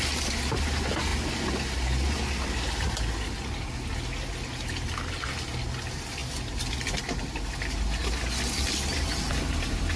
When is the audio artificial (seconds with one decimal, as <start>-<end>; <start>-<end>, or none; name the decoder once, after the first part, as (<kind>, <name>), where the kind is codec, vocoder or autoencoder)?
none